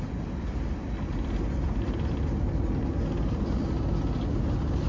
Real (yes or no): yes